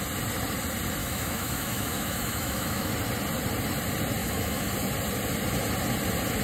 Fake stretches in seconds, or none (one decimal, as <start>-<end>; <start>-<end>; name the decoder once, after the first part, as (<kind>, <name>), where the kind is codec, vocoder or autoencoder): 1.0-2.9 (autoencoder, DAC-VAE); 4.2-4.7